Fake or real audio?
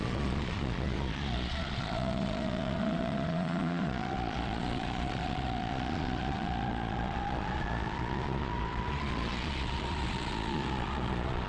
fake